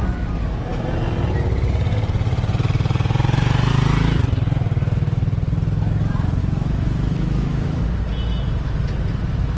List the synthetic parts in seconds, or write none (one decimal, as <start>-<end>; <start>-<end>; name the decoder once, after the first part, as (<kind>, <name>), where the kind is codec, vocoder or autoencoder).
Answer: 6.4-7.8 (autoencoder, DAC-VAE)